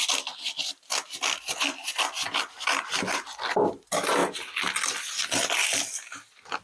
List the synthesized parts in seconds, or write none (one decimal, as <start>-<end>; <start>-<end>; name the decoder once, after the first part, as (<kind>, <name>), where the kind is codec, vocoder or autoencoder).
none

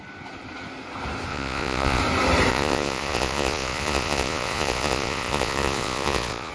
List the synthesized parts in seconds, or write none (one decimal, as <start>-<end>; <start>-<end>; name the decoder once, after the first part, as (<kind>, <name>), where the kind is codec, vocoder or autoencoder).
1.3-2.0 (vocoder, Vocos); 2.5-6.5

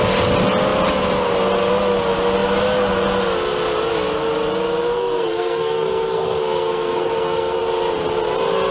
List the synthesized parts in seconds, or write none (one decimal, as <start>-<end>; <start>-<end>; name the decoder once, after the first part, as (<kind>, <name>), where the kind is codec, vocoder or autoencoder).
4.9-7.6 (codec, SNAC)

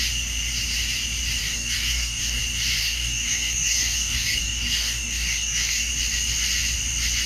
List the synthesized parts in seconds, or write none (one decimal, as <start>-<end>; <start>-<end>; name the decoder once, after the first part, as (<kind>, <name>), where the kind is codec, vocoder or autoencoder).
1.4-2.4 (codec, DAC); 2.8-5.9

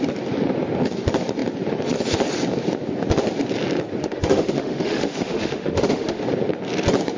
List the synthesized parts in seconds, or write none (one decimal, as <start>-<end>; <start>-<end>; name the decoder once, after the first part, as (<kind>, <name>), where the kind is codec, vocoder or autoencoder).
4.0-6.2 (autoencoder, DAC-VAE)

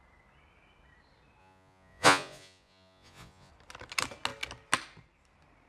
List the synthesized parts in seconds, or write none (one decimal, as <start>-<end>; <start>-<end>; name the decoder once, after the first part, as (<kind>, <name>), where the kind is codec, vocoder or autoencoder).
1.4-3.5 (vocoder, Vocos)

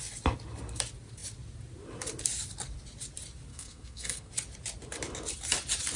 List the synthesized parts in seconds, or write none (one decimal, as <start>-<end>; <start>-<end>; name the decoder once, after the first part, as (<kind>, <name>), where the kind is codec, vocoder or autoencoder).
3.5-4.3 (codec, SNAC)